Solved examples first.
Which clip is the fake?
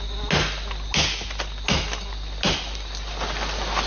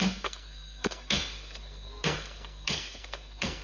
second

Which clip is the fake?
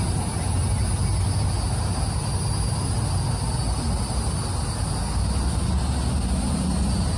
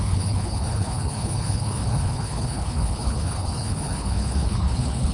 second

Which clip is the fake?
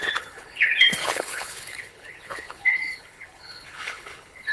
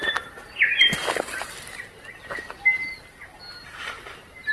first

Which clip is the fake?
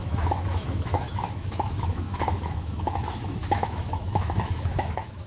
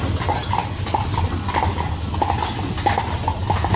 first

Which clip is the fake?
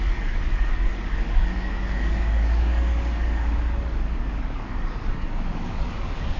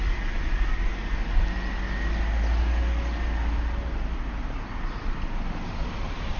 first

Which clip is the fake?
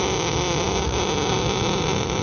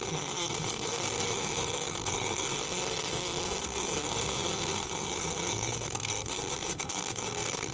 second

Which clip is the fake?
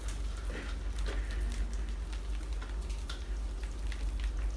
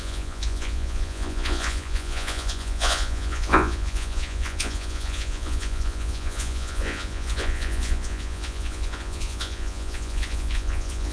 second